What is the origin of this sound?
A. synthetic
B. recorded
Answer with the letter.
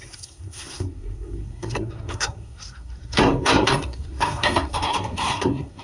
A